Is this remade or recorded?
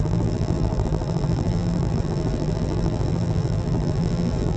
remade